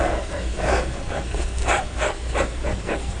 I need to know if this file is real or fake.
fake